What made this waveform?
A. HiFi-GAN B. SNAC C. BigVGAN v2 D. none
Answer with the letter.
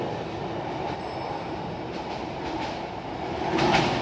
C